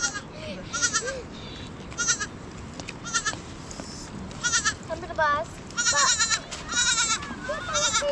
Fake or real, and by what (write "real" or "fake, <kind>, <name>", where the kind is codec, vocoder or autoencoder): real